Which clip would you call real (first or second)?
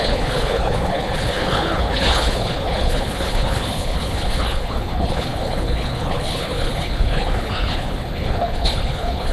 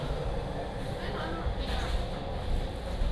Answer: second